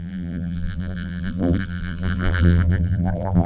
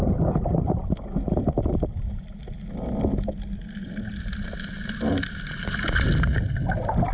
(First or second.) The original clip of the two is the second